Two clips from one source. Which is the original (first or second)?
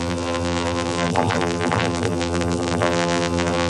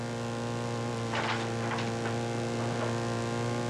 second